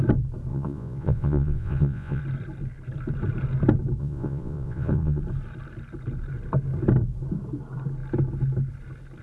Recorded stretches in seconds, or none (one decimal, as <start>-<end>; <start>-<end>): 0.0-0.5; 2.2-4.0; 5.2-9.2